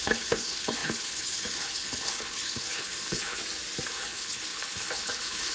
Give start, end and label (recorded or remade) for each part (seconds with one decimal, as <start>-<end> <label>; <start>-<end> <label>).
0.0-3.4 remade; 3.4-3.9 recorded; 3.9-5.5 remade